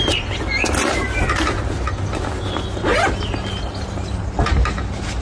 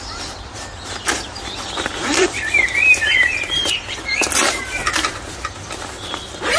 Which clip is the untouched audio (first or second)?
first